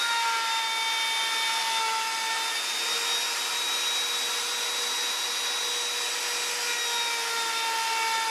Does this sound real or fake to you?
real